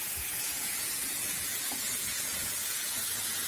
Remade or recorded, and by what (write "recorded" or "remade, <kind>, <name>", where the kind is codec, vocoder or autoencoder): remade, vocoder, Vocos